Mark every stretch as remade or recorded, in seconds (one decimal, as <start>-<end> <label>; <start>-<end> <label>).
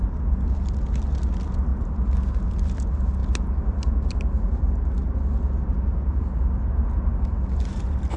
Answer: 0.0-8.2 recorded